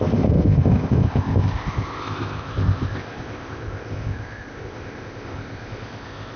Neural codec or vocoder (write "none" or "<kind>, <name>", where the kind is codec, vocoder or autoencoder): codec, ZipCodec